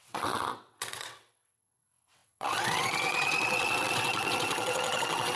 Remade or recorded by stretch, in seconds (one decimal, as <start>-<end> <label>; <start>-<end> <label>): 0.0-5.4 remade